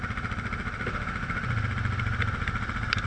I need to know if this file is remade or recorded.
recorded